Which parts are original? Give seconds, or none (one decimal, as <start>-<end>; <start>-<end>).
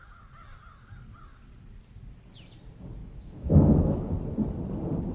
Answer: 0.0-3.0; 4.2-5.1